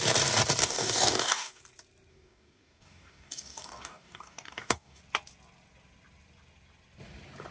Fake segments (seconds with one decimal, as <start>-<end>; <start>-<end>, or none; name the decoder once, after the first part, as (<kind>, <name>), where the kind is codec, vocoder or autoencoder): 0.6-1.6 (codec, DAC); 2.1-5.0